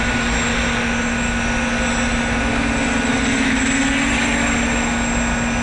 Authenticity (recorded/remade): recorded